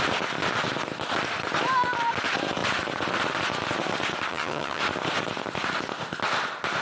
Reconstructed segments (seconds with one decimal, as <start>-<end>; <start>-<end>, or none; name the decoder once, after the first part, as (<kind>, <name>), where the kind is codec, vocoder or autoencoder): 4.3-4.8 (vocoder, HiFi-GAN)